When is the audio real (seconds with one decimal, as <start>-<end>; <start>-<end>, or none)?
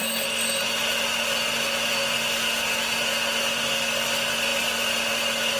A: 0.0-5.6